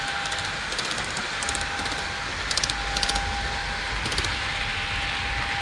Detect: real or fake real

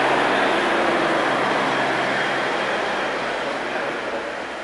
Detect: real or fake real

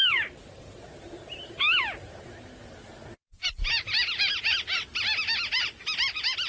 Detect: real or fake real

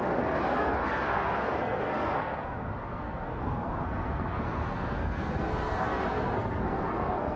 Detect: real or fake fake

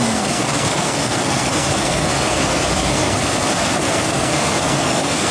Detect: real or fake fake